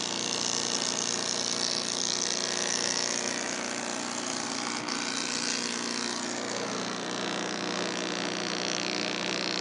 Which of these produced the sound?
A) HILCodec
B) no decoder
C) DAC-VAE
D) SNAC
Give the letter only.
B